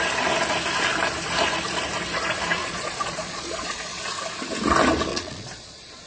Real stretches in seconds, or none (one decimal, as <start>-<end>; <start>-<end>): 0.0-2.6; 4.0-5.1